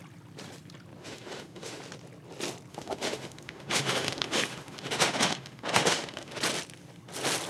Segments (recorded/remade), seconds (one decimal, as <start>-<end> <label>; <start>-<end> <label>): 0.0-1.0 recorded; 1.0-1.8 remade; 1.8-2.7 recorded; 2.7-6.4 remade; 6.4-7.5 recorded